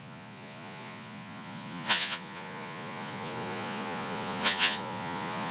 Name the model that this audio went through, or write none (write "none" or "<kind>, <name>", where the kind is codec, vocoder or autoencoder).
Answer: vocoder, Vocos